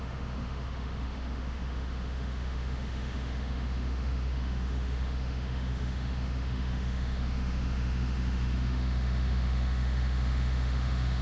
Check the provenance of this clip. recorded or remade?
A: remade